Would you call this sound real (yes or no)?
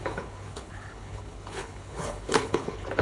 no